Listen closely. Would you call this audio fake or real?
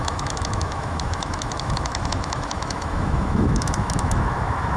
fake